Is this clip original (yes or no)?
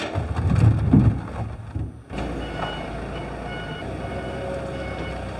yes